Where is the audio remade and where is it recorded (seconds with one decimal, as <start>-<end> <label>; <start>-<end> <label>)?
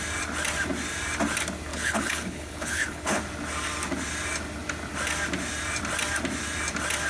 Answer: 0.0-1.7 recorded; 1.7-3.2 remade; 3.2-7.1 recorded